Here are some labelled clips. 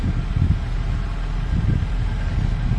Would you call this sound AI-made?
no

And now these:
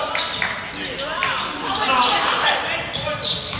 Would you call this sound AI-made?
no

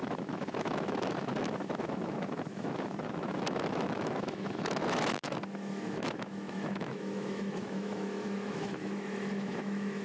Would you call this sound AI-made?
yes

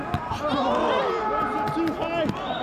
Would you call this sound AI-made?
no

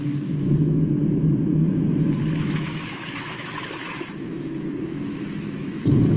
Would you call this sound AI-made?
yes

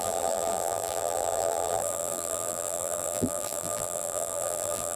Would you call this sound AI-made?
yes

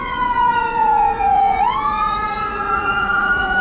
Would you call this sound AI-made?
yes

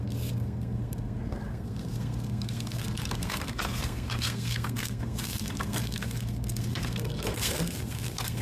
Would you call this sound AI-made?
yes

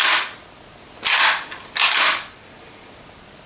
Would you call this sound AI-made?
no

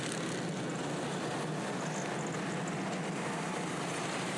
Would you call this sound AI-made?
no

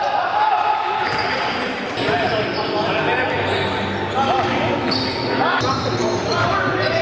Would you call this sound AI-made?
no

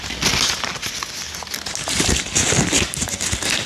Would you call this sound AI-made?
no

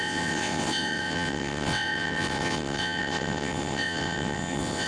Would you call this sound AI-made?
yes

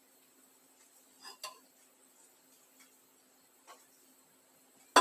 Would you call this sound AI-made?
no